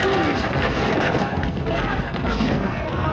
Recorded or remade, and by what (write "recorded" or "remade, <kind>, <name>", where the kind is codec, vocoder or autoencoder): remade, codec, SNAC